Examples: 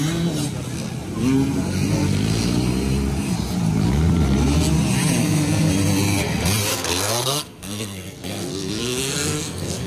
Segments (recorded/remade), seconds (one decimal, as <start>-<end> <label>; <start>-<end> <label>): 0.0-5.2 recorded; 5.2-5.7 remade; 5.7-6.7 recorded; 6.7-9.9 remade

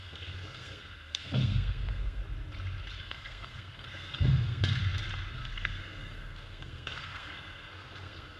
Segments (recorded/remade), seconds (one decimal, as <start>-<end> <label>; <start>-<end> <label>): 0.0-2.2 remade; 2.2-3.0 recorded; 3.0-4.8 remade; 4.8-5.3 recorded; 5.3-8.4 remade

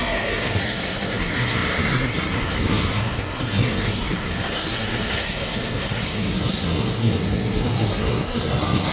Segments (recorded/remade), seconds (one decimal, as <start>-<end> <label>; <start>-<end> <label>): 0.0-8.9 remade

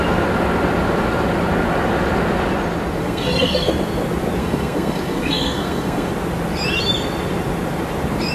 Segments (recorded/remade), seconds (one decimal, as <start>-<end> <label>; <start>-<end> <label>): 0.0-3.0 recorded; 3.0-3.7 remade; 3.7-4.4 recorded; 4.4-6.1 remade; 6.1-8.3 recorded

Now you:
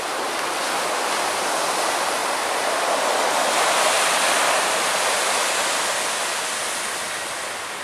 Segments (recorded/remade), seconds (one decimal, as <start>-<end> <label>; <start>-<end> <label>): 0.0-7.8 recorded

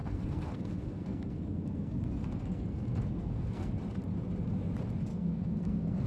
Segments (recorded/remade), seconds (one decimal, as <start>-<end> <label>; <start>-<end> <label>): 0.0-3.7 remade; 3.7-5.1 recorded; 5.1-6.1 remade

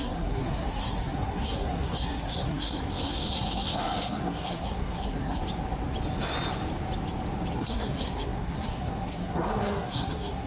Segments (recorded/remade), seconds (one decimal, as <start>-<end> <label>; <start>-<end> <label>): 0.0-5.4 remade; 5.4-7.5 recorded; 7.5-10.5 remade